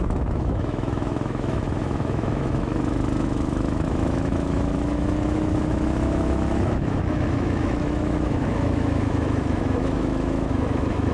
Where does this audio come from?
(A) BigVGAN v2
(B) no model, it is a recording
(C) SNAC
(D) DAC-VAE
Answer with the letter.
D